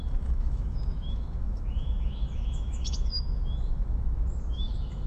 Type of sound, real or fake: fake